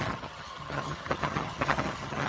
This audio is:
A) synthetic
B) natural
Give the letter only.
A